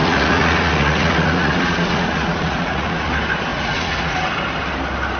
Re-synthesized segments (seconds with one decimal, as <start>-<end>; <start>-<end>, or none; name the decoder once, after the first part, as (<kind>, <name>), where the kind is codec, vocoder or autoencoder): 0.0-3.1 (vocoder, Vocos); 3.5-4.2

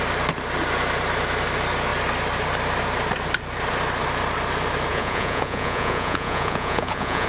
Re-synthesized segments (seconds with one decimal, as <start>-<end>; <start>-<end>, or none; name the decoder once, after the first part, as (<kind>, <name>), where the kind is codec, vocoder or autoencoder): 4.9-7.3 (vocoder, Vocos)